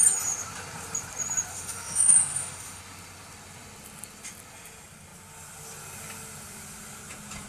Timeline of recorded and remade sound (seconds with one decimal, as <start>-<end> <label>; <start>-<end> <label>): 0.0-1.5 recorded; 1.5-2.8 remade; 2.8-7.5 recorded